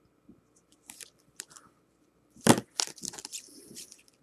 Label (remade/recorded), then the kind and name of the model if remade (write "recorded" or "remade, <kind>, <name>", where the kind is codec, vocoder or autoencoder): remade, vocoder, BigVGAN v2